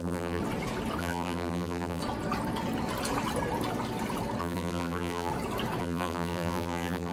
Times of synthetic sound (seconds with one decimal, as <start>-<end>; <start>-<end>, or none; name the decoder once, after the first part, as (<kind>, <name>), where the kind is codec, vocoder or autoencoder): 0.0-0.4 (vocoder, BigVGAN v2); 1.0-2.0; 4.4-5.3; 5.8-7.1